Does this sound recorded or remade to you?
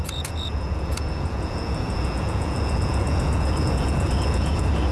remade